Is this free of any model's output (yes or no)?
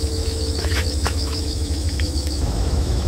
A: no